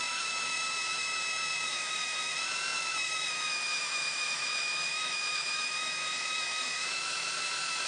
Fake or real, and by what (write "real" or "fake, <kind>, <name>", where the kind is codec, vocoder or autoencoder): fake, autoencoder, DAC-VAE